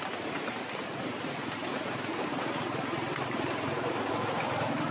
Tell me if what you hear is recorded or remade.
remade